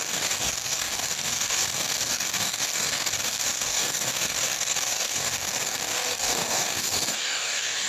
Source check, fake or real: fake